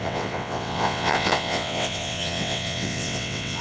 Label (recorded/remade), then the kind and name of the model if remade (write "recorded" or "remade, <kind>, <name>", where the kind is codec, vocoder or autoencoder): remade, vocoder, WaveNeXt